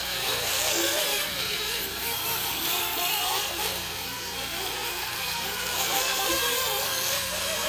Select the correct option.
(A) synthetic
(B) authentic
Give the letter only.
A